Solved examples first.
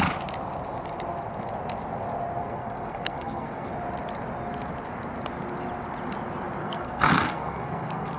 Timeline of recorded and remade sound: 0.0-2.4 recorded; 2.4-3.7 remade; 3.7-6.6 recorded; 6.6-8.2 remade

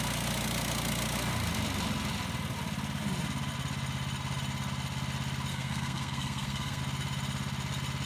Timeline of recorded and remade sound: 0.0-5.5 recorded; 5.5-6.8 remade; 6.8-8.1 recorded

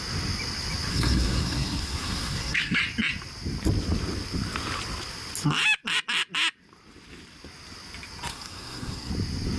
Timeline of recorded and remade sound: 0.0-0.9 recorded; 0.9-2.8 remade; 2.8-8.3 recorded; 8.3-9.1 remade; 9.1-9.6 recorded